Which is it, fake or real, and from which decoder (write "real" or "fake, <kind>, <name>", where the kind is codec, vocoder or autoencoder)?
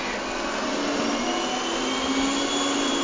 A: real